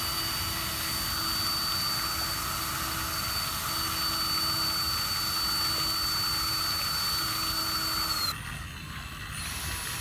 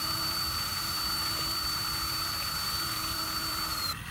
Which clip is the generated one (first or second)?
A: second